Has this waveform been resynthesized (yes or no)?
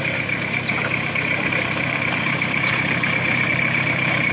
yes